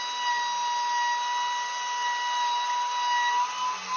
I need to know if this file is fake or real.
real